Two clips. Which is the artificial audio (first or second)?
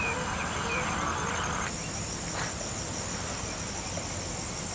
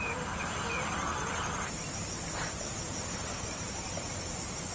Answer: second